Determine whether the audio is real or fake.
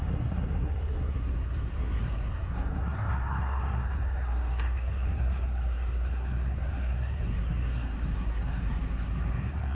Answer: fake